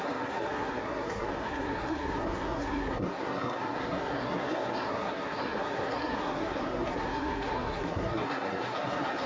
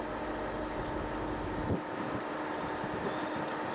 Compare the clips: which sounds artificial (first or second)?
first